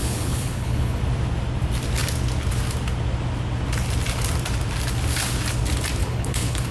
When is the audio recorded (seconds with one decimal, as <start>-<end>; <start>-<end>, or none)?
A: 1.0-6.0